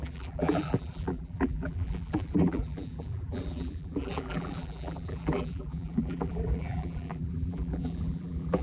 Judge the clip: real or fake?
fake